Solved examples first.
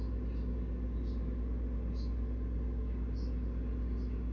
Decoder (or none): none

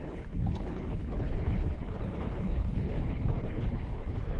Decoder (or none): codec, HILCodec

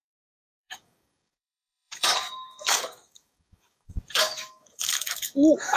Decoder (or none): codec, DAC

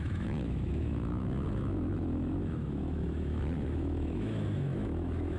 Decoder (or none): autoencoder, DAC-VAE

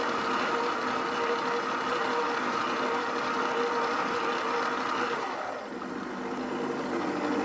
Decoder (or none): none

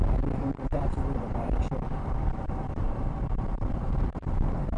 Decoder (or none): vocoder, BigVGAN v2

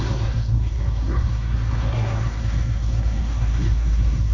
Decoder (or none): codec, SNAC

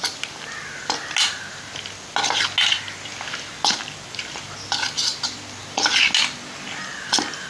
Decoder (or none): none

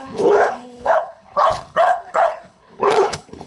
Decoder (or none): codec, HILCodec